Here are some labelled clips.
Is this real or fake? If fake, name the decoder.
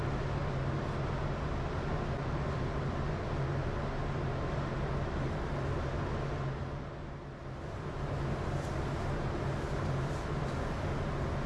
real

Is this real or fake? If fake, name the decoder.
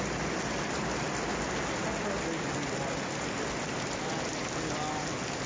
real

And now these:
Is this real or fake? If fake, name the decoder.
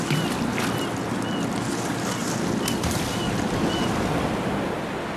real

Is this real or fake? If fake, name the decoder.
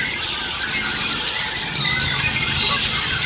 real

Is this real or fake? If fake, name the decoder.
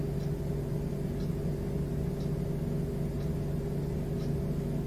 real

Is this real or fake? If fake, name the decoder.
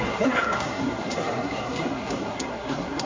fake, codec, SNAC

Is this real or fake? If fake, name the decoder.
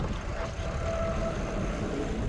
real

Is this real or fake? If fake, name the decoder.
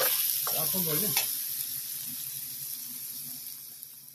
real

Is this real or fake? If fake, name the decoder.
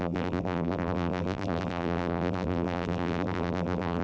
fake, vocoder, BigVGAN v2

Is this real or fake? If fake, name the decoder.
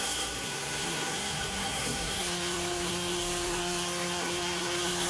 fake, codec, SNAC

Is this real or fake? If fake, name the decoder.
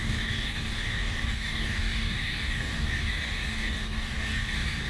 fake, codec, DAC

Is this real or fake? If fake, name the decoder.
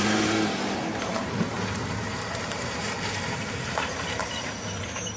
fake, vocoder, BigVGAN v2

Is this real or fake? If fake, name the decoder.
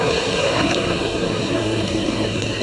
fake, codec, SNAC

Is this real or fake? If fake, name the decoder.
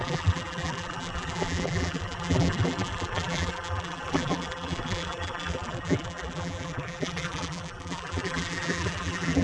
fake, vocoder, BigVGAN v2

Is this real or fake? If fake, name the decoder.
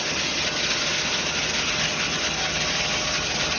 real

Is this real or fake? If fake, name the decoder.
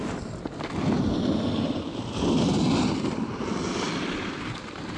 real